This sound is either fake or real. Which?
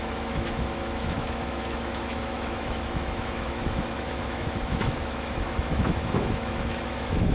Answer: fake